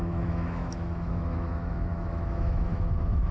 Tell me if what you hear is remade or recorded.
remade